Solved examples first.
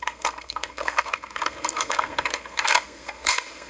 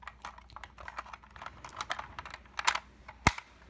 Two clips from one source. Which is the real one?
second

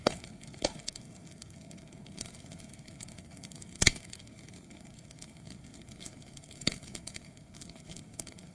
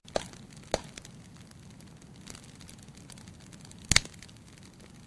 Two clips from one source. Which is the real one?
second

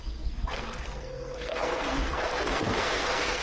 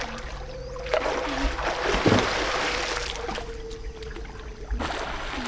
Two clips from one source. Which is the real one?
second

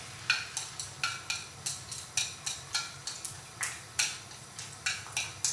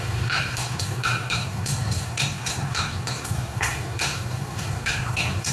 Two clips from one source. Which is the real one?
first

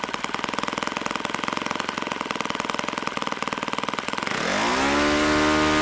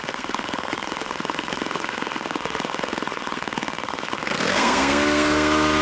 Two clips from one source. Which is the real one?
first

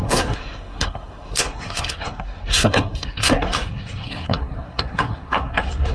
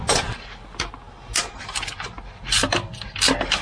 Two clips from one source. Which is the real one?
second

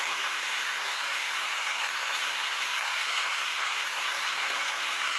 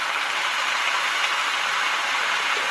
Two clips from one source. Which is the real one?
second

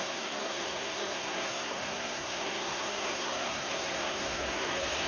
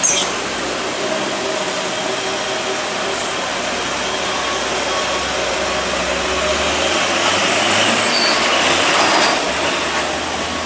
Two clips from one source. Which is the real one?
second